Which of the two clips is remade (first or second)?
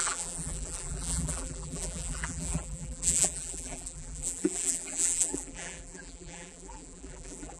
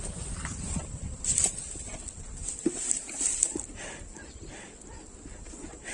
first